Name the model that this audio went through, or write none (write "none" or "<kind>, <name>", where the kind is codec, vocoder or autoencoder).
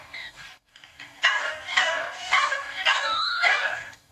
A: codec, DAC